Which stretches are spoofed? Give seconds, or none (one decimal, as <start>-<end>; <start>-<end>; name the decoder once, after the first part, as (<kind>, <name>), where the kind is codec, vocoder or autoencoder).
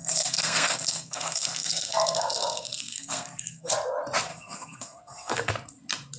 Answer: 0.0-3.7 (codec, SNAC); 4.3-5.5